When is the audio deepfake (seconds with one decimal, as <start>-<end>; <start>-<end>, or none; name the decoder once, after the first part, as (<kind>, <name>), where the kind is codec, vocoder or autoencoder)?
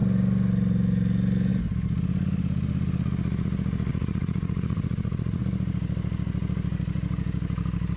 3.9-5.4 (vocoder, Vocos)